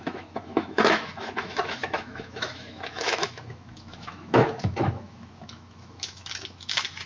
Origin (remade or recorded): remade